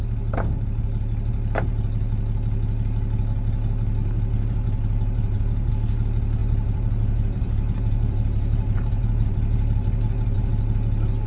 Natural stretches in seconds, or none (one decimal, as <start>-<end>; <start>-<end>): 0.0-4.0; 5.7-6.4; 10.5-11.3